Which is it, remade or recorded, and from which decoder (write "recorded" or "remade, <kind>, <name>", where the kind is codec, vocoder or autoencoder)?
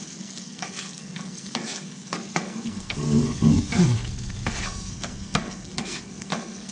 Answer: remade, codec, SNAC